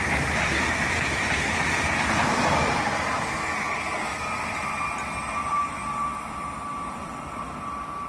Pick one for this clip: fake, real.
real